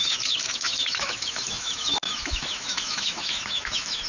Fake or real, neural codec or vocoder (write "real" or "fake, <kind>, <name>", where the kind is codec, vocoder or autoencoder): fake, autoencoder, DAC-VAE